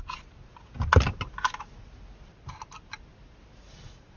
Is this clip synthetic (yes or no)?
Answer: no